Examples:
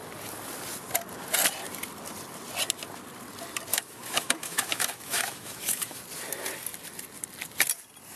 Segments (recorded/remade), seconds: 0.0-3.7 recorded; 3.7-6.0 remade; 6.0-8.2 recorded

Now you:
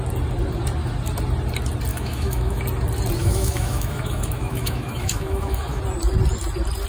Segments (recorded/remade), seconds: 0.0-1.9 recorded; 1.9-2.6 remade; 2.6-3.2 recorded; 3.2-5.8 remade; 5.8-6.9 recorded

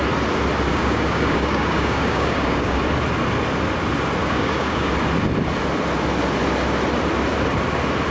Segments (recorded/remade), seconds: 0.0-0.7 recorded; 0.7-2.8 remade; 2.8-4.2 recorded; 4.2-4.9 remade; 4.9-8.1 recorded